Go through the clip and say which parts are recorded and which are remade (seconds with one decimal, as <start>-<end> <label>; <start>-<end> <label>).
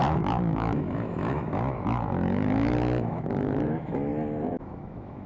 0.0-4.1 remade; 4.1-4.6 recorded; 4.6-5.3 remade